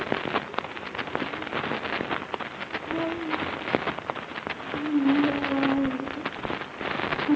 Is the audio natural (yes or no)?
yes